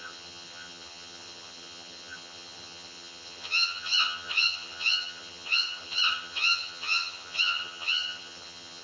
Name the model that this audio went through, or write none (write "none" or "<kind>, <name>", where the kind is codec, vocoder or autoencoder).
vocoder, HiFi-GAN